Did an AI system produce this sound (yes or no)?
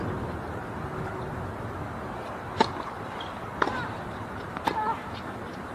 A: no